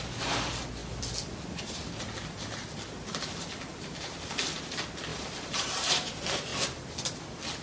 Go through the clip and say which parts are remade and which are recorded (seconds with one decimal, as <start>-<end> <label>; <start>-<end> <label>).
0.0-3.7 recorded; 3.7-4.3 remade; 4.3-5.1 recorded; 5.1-6.1 remade; 6.1-7.6 recorded